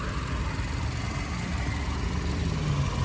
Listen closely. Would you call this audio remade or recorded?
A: recorded